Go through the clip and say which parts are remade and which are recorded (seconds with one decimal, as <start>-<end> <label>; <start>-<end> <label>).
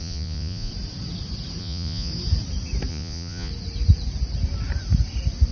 0.0-0.7 remade; 0.7-1.6 recorded; 1.6-2.1 remade; 2.1-2.9 recorded; 2.9-3.5 remade; 3.5-5.5 recorded